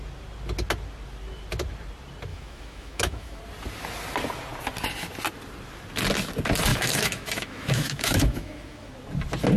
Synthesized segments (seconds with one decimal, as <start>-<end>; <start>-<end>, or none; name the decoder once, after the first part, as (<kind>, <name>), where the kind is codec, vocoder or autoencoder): 2.3-3.4 (autoencoder, DAC-VAE); 6.7-8.9